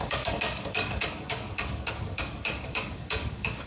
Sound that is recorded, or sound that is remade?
remade